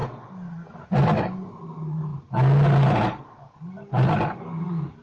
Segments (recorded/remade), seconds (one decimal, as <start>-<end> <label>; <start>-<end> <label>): 0.0-3.8 recorded; 3.8-4.4 remade; 4.4-5.0 recorded